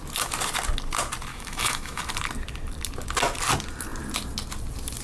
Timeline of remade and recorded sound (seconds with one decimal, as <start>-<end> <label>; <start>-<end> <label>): 0.0-1.3 recorded; 1.3-2.0 remade; 2.0-5.0 recorded